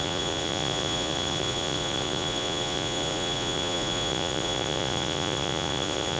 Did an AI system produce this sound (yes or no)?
yes